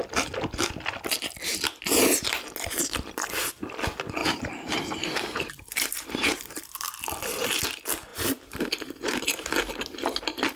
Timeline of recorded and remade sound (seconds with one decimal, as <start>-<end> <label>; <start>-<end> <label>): 0.0-4.2 recorded; 4.2-6.9 remade; 6.9-8.1 recorded; 8.1-9.5 remade; 9.5-10.6 recorded